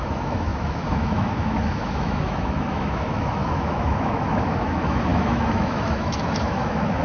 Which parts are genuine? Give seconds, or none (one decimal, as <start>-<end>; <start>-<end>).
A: none